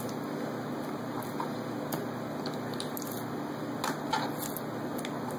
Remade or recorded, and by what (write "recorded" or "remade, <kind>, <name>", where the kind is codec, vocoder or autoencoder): recorded